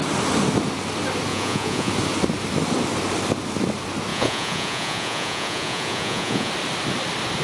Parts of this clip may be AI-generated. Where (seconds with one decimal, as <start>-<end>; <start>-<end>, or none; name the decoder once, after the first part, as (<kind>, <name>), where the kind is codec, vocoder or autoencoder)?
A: 1.3-1.9 (vocoder, Vocos); 4.1-6.5